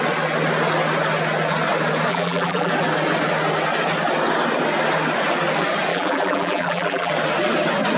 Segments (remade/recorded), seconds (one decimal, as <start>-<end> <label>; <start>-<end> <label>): 0.0-2.1 recorded; 2.1-2.7 remade; 2.7-5.9 recorded; 5.9-7.1 remade; 7.1-8.0 recorded